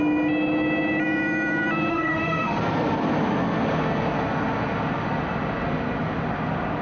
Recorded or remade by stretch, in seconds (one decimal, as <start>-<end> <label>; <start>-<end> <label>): 0.0-1.9 recorded; 1.9-2.6 remade; 2.6-6.8 recorded